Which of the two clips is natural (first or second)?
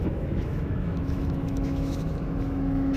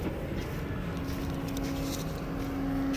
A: second